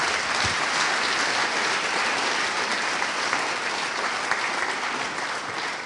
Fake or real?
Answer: real